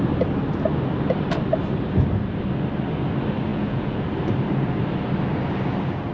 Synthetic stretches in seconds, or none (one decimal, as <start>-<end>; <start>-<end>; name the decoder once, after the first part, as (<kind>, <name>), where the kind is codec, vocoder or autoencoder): 3.5-4.1 (vocoder, Vocos)